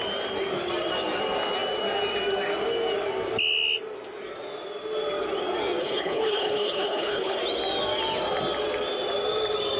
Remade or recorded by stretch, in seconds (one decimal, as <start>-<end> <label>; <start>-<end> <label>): 0.0-5.8 recorded; 5.8-7.4 remade; 7.4-9.8 recorded

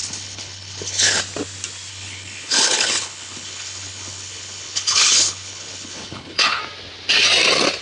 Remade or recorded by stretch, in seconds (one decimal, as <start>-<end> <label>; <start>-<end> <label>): 0.0-1.2 remade; 1.2-1.9 recorded; 1.9-6.6 remade; 6.6-7.8 recorded